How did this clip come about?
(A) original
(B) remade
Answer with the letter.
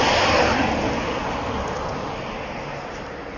A